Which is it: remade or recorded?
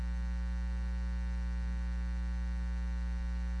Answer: recorded